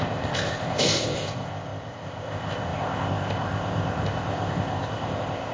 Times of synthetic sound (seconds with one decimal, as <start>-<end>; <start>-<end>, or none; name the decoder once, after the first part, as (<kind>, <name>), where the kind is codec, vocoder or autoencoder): 0.0-5.5 (codec, ZipCodec)